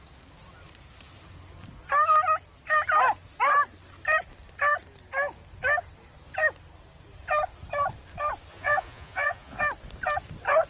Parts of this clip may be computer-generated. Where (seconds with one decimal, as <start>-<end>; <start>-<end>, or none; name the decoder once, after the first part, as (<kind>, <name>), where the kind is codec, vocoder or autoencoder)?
8.5-9.6 (vocoder, Vocos)